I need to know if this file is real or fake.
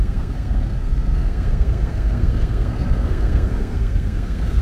fake